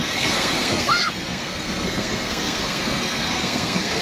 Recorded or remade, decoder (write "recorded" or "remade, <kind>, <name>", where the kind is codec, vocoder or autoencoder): remade, codec, SNAC